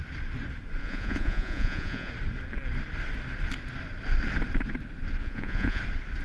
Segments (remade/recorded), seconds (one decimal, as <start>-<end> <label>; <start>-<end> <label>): 0.0-0.8 recorded; 0.8-2.1 remade; 2.1-5.2 recorded; 5.2-5.8 remade; 5.8-6.2 recorded